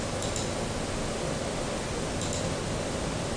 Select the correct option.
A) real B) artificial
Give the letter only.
A